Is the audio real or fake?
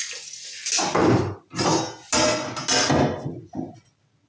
real